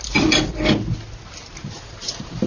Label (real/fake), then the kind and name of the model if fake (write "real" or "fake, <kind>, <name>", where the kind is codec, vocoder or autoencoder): real